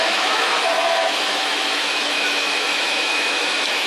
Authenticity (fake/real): fake